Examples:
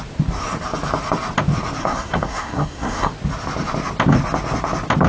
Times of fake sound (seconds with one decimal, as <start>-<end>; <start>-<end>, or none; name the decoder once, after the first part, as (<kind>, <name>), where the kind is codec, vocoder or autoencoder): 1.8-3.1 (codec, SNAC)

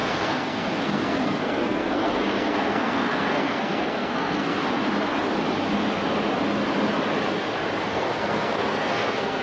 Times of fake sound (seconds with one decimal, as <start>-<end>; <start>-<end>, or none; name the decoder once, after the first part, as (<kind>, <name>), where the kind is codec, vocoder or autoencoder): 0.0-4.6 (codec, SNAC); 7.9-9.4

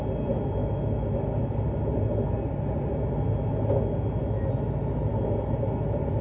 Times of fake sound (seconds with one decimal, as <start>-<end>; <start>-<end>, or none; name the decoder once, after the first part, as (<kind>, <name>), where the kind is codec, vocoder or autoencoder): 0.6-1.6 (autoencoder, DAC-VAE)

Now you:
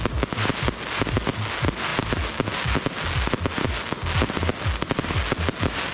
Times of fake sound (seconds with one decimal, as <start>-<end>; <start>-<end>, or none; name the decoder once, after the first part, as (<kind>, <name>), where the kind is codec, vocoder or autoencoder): none

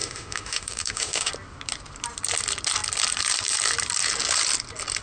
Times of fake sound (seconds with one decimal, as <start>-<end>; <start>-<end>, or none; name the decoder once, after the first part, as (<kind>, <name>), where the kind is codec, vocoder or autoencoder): 0.0-1.3 (autoencoder, DAC-VAE)

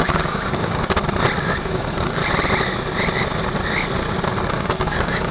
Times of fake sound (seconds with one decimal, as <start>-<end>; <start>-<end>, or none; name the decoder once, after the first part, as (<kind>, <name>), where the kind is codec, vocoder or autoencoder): 0.0-1.0 (codec, DAC); 1.6-2.2; 4.5-5.3

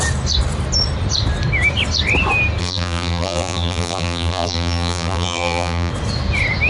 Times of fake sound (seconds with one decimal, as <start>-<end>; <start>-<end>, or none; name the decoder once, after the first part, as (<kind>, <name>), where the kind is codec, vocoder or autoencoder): 2.6-5.9 (vocoder, BigVGAN v2)

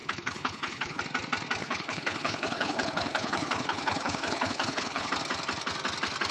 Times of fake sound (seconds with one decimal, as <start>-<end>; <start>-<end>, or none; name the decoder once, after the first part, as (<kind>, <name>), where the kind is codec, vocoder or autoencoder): 0.0-1.0 (codec, HILCodec); 1.6-5.1